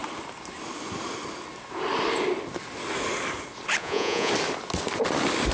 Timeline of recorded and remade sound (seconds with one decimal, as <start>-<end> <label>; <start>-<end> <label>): 0.0-3.8 recorded; 3.8-4.3 remade; 4.3-5.5 recorded